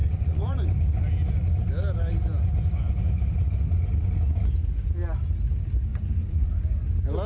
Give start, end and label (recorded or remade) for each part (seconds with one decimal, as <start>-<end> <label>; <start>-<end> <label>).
0.0-0.7 remade; 0.7-5.9 recorded; 5.9-6.5 remade; 6.5-7.3 recorded

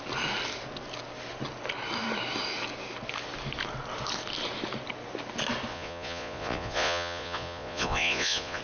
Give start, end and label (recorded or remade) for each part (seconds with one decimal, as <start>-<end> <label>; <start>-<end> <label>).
0.0-5.7 recorded; 5.7-8.6 remade

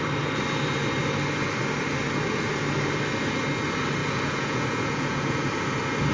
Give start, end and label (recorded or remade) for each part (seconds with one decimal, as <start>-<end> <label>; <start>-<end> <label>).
0.0-4.0 recorded; 4.0-5.5 remade; 5.5-6.1 recorded

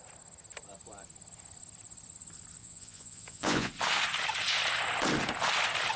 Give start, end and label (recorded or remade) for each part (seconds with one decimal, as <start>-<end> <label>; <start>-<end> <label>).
0.0-2.6 recorded; 2.6-3.7 remade; 3.7-6.0 recorded

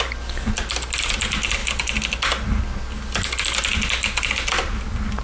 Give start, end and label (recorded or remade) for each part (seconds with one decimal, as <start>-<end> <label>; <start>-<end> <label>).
0.0-5.2 recorded

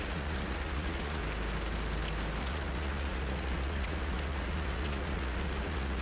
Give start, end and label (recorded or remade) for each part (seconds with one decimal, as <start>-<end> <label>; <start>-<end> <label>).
0.0-1.2 remade; 1.2-2.4 recorded; 2.4-6.0 remade

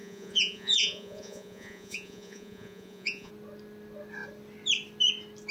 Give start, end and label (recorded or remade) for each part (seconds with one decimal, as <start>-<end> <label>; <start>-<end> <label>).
0.0-3.3 remade; 3.3-5.5 recorded

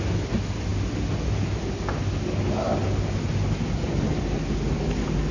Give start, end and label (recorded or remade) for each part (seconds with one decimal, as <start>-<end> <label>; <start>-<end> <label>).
0.0-5.3 recorded